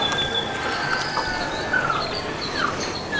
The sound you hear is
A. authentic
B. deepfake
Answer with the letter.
A